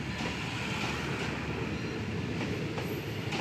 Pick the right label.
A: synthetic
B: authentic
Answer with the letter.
B